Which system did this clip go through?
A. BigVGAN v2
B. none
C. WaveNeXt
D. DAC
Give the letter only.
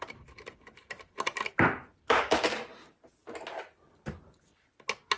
B